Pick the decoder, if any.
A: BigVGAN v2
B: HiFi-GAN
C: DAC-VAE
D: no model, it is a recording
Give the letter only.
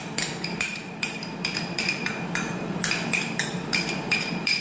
A